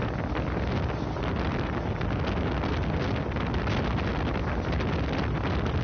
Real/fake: real